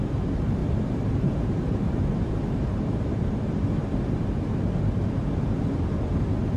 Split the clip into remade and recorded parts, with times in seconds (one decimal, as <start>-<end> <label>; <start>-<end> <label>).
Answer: 0.0-0.6 recorded; 0.6-4.6 remade; 4.6-6.6 recorded